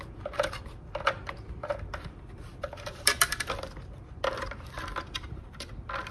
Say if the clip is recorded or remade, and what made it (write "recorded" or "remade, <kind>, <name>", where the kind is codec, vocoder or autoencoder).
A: remade, vocoder, BigVGAN v2